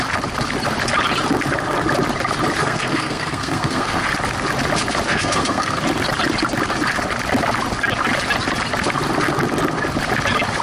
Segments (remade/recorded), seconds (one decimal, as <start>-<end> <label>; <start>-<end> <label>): 0.0-2.6 recorded; 2.6-4.1 remade; 4.1-5.1 recorded; 5.1-5.8 remade; 5.8-10.6 recorded